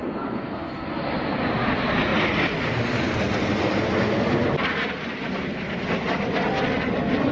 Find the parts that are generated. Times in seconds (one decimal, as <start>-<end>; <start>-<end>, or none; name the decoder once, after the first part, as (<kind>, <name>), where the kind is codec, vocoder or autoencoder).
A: 0.0-0.7 (codec, SNAC)